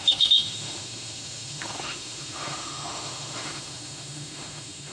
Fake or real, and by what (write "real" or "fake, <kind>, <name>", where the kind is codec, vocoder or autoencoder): fake, autoencoder, DAC-VAE